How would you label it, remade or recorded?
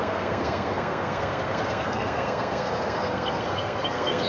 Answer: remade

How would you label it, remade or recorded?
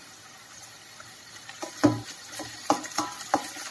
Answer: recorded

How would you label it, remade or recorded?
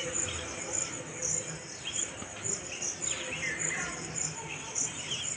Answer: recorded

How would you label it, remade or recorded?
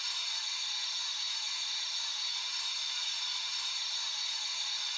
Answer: recorded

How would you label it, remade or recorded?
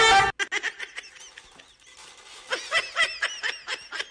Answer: recorded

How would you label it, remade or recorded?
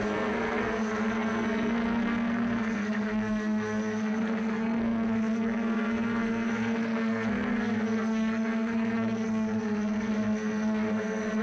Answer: remade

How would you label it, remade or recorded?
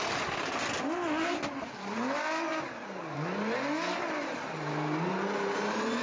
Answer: recorded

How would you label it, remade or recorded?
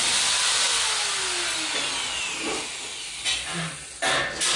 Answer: recorded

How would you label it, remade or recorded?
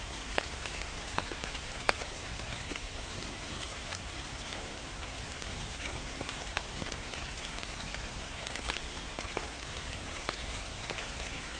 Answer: remade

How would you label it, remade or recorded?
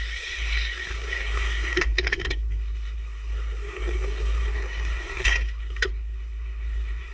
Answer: remade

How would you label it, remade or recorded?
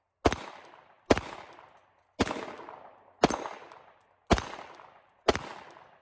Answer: recorded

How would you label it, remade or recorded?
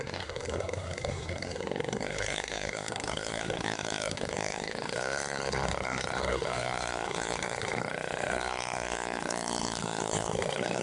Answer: remade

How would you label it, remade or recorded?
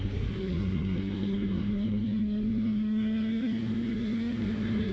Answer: remade